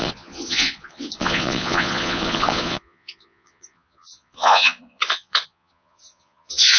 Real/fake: fake